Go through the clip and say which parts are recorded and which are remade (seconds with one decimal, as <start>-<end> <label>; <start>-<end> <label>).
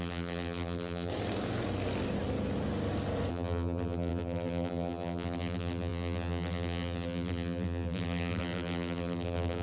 0.0-1.1 remade; 1.1-3.3 recorded; 3.3-9.6 remade